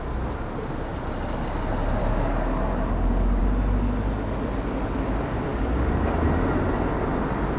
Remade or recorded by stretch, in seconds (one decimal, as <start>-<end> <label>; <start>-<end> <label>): 0.0-2.0 recorded; 2.0-3.4 remade; 3.4-5.5 recorded; 5.5-6.0 remade; 6.0-7.6 recorded